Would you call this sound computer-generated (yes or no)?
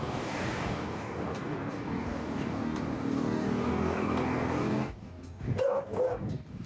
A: yes